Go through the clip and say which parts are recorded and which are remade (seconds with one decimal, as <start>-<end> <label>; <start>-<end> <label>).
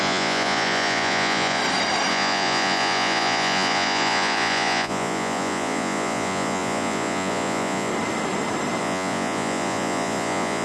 0.0-1.6 remade; 1.6-2.1 recorded; 2.1-7.9 remade; 7.9-8.8 recorded; 8.8-10.6 remade